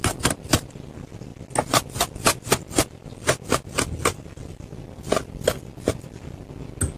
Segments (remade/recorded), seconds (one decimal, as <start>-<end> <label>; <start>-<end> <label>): 0.0-7.0 recorded